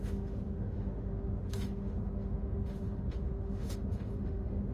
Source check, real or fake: fake